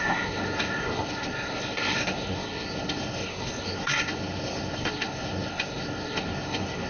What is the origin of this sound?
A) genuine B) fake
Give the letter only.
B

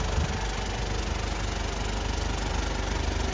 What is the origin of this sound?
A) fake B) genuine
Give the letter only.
B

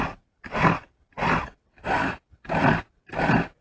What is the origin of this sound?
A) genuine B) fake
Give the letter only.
A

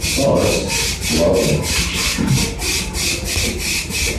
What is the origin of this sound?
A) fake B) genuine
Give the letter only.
B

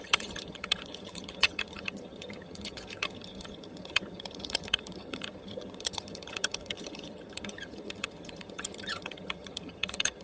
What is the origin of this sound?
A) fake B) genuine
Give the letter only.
A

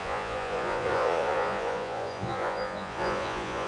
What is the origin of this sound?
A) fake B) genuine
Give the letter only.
A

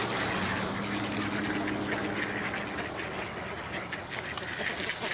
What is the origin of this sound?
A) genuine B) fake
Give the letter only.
A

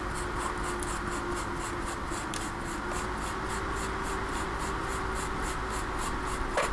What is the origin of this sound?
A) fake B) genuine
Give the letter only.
B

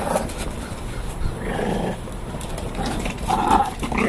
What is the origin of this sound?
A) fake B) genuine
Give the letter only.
B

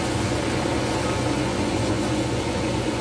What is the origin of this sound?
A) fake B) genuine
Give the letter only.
A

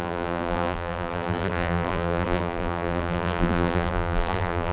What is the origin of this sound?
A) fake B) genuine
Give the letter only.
A